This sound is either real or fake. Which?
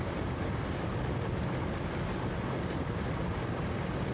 real